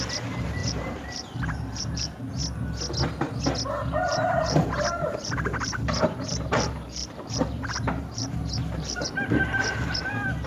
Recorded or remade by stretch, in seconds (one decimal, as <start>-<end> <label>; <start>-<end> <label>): 0.0-2.4 remade; 2.4-3.9 recorded; 3.9-10.5 remade